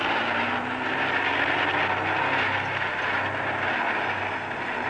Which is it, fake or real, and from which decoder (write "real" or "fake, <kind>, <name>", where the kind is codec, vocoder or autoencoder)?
real